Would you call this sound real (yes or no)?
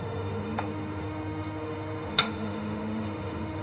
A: no